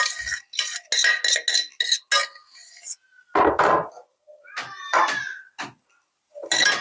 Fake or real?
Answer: real